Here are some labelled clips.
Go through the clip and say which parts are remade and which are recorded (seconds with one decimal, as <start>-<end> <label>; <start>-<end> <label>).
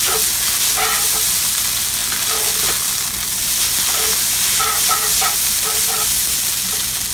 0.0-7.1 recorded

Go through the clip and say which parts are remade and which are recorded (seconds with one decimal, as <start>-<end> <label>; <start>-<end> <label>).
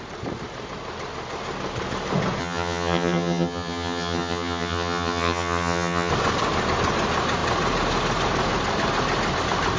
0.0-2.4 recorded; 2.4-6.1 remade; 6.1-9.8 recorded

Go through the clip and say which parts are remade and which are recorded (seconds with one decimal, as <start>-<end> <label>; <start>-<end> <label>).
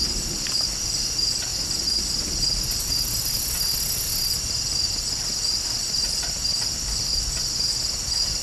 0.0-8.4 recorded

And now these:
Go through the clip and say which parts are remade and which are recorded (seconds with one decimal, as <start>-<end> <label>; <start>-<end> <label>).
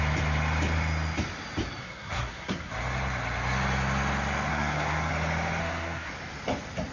0.0-1.8 recorded; 1.8-2.7 remade; 2.7-4.5 recorded; 4.5-5.1 remade; 5.1-5.6 recorded; 5.6-6.1 remade; 6.1-6.9 recorded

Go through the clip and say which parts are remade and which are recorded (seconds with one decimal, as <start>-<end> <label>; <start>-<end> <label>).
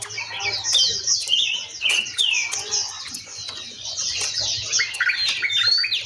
0.0-1.3 recorded; 1.3-4.3 remade; 4.3-6.1 recorded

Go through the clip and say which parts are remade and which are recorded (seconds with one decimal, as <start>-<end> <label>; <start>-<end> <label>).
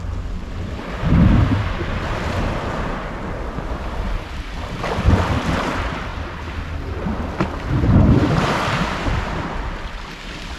0.0-10.6 recorded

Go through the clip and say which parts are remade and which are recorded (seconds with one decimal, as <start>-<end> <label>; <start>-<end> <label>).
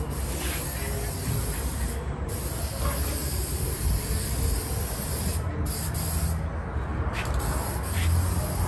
0.0-3.2 recorded; 3.2-4.1 remade; 4.1-8.7 recorded